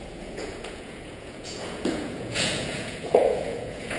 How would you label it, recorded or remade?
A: remade